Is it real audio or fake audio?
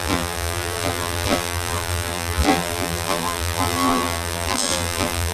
fake